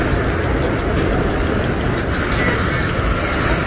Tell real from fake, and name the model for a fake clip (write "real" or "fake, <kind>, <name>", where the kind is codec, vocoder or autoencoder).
real